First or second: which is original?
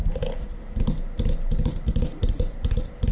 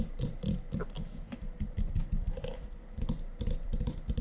first